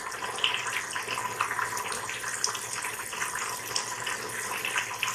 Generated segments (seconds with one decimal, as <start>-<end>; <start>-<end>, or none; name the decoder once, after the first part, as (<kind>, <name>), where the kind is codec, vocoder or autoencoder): none